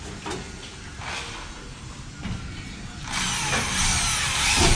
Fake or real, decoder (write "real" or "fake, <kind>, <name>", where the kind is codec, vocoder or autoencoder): real